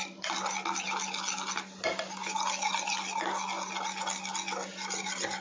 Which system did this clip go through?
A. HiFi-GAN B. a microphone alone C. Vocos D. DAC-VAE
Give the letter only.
B